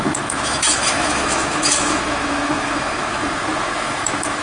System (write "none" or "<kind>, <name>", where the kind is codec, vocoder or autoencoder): autoencoder, DAC-VAE